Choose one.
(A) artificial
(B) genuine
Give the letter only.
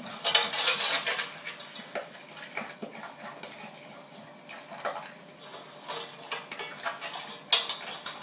B